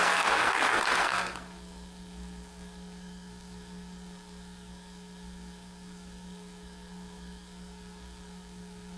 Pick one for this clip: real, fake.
fake